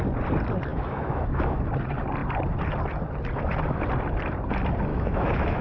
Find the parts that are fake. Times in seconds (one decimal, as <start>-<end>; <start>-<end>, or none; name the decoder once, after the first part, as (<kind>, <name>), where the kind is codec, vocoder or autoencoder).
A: 0.7-1.6 (autoencoder, DAC-VAE); 4.9-5.6